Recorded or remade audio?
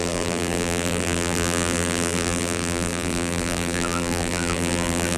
remade